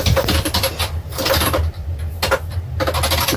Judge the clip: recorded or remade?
recorded